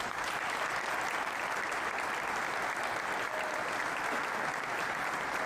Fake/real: real